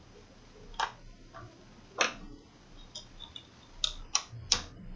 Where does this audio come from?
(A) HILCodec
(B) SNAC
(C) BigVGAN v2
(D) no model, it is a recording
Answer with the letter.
D